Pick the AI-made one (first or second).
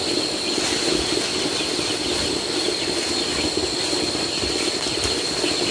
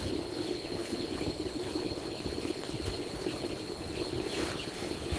second